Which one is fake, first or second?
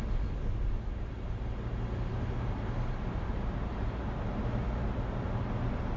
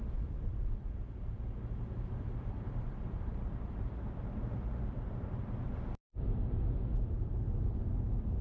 second